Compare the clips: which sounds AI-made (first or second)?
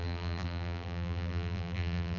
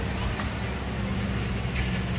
first